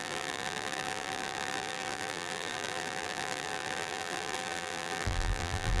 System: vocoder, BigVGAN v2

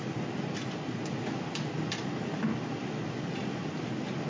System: none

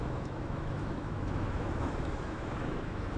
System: autoencoder, DAC-VAE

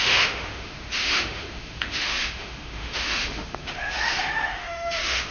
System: autoencoder, DAC-VAE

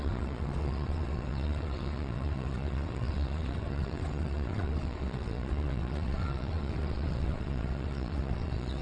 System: vocoder, WaveNeXt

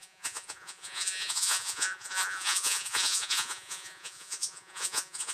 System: vocoder, Vocos